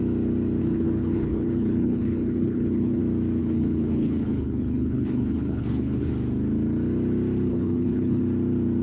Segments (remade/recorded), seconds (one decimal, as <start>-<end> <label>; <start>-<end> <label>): 0.0-0.6 recorded; 0.6-3.0 remade; 3.0-3.4 recorded; 3.4-6.1 remade; 6.1-7.5 recorded; 7.5-8.2 remade; 8.2-8.8 recorded